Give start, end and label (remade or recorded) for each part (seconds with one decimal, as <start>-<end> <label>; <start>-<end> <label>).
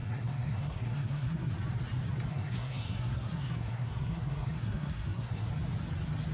0.0-1.5 remade; 1.5-2.3 recorded; 2.3-5.5 remade; 5.5-6.3 recorded